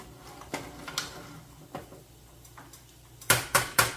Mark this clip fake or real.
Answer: real